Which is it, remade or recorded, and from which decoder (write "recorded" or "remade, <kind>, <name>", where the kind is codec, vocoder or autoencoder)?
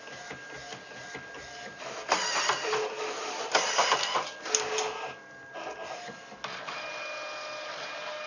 recorded